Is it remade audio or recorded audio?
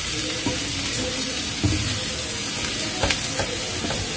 recorded